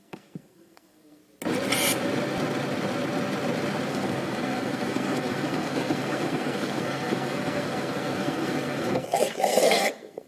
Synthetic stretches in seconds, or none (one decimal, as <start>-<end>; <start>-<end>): 0.0-1.2; 3.9-10.3